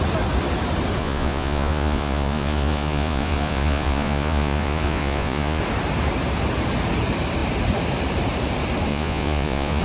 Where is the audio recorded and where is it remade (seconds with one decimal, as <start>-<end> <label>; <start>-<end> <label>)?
0.0-1.0 recorded; 1.0-5.6 remade; 5.6-8.9 recorded; 8.9-9.8 remade